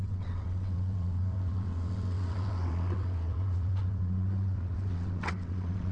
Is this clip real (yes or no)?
no